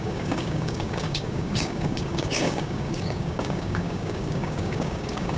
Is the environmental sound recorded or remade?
remade